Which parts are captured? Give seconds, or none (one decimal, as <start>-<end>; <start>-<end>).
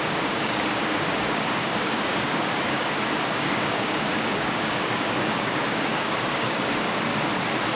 7.1-7.8